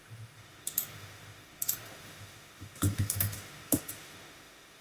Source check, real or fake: fake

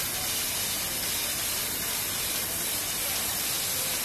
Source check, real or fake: real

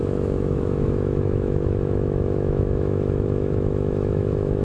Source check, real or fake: fake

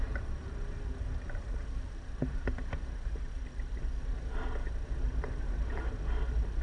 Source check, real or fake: real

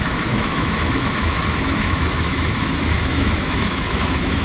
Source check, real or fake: fake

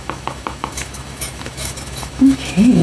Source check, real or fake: fake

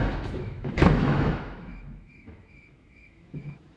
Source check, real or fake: fake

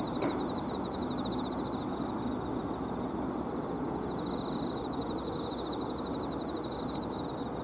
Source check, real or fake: real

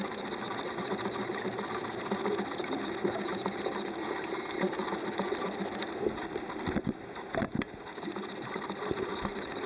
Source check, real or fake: real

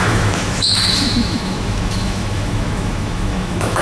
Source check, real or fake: fake